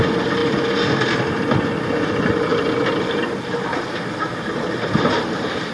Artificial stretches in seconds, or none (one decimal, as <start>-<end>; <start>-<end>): 0.4-1.2; 2.5-5.7